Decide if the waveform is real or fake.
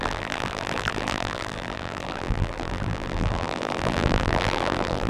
fake